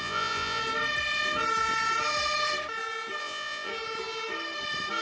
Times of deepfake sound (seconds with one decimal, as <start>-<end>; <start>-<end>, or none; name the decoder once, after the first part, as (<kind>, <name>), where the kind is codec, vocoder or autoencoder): 0.0-0.6 (vocoder, Vocos); 3.2-3.7